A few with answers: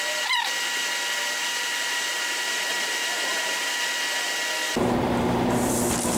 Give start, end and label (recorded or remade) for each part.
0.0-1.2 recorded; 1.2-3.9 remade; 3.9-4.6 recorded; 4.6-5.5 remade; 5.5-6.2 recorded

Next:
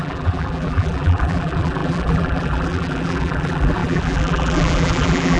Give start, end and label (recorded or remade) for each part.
0.0-5.4 remade